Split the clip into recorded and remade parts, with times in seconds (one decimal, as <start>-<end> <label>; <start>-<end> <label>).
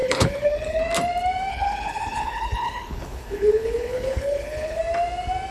0.0-0.8 remade; 0.8-1.5 recorded; 1.5-4.8 remade; 4.8-5.5 recorded